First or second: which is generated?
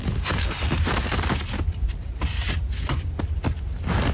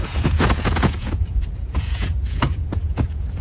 second